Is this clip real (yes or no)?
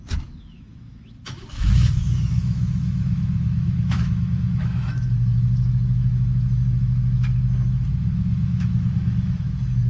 no